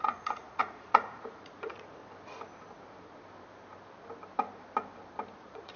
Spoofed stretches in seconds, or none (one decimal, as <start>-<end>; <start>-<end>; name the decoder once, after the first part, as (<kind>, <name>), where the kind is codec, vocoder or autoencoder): 0.0-2.0 (vocoder, Vocos); 5.3-5.8